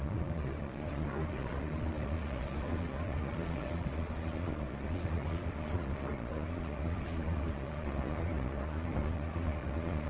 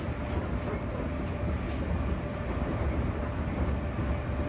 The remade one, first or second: first